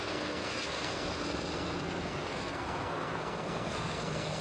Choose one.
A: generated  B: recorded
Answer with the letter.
A